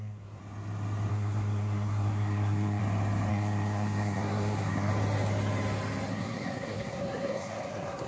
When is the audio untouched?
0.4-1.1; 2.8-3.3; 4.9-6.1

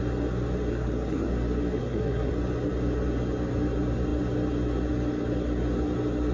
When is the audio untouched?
0.0-0.7; 1.3-1.8; 2.3-6.3

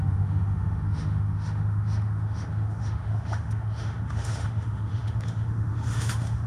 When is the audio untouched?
none

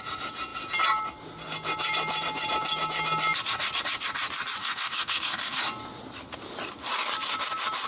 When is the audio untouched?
0.0-4.6; 5.6-7.9